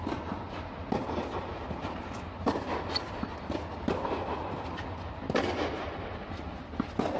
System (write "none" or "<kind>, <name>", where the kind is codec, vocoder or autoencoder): none